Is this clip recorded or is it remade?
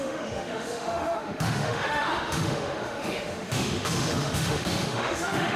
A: remade